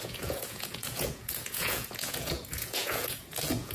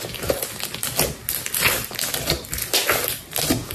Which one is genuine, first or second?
second